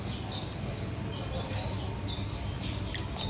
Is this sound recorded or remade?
recorded